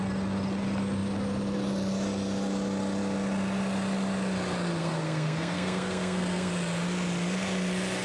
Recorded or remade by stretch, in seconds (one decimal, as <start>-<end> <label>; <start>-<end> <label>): 0.0-4.8 recorded; 4.8-6.5 remade; 6.5-8.0 recorded